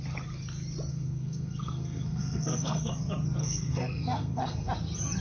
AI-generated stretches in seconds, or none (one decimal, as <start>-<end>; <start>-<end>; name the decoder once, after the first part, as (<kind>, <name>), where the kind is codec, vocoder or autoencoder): 0.9-2.9 (codec, SNAC); 3.4-4.7